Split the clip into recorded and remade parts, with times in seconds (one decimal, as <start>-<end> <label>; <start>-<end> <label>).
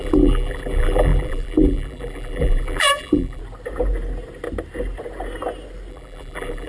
0.0-3.4 remade; 3.4-5.9 recorded; 5.9-6.7 remade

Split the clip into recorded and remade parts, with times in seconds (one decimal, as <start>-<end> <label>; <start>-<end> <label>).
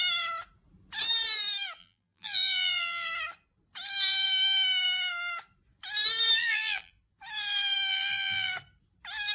0.0-1.8 recorded; 1.8-3.1 remade; 3.1-6.4 recorded; 6.4-6.9 remade; 6.9-7.9 recorded; 7.9-8.5 remade; 8.5-9.3 recorded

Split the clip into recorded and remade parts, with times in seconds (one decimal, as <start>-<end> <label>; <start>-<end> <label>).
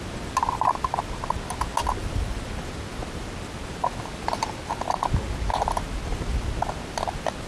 0.0-2.0 recorded; 2.0-2.6 remade; 2.6-7.5 recorded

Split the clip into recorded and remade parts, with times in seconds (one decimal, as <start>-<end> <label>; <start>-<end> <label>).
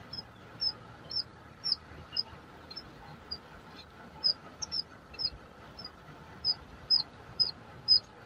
0.0-1.3 recorded; 1.3-2.4 remade; 2.4-4.4 recorded; 4.4-7.5 remade; 7.5-8.3 recorded